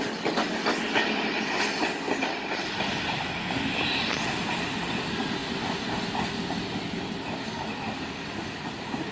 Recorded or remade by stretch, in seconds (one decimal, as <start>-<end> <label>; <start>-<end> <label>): 0.0-9.1 recorded